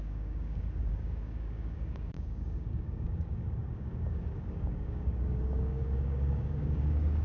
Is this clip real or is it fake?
fake